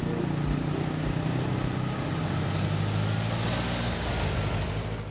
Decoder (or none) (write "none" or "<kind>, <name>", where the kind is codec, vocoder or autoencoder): none